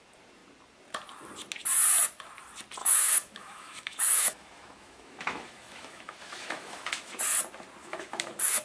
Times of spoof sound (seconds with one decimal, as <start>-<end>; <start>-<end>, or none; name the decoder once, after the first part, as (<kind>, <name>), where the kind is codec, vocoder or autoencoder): 2.8-7.2 (autoencoder, DAC-VAE); 7.8-8.6